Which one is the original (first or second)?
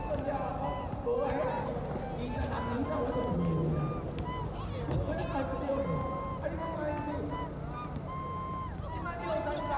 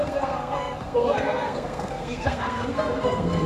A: first